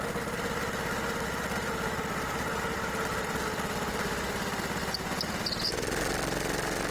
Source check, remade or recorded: recorded